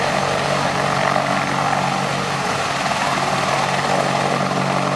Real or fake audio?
real